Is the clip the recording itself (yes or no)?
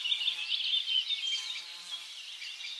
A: yes